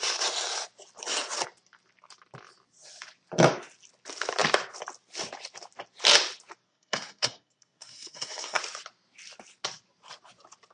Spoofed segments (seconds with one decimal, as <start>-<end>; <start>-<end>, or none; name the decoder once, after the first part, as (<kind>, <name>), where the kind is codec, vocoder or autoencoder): 6.7-8.6 (codec, SNAC)